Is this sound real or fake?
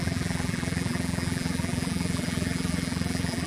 fake